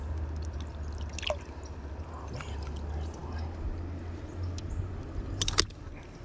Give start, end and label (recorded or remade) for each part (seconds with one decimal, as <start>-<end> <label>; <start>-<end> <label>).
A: 0.0-6.2 recorded